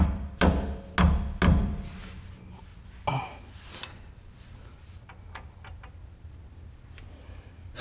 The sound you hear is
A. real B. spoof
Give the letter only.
A